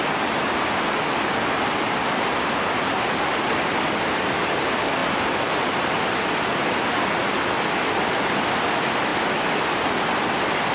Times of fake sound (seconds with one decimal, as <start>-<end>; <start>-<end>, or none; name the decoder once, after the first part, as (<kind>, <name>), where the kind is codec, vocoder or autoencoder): none